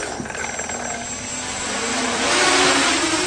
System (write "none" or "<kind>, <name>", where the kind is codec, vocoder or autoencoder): none